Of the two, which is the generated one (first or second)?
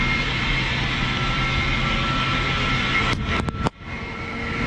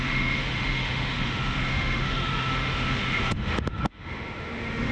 second